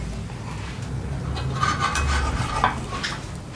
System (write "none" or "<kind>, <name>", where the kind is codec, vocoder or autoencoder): none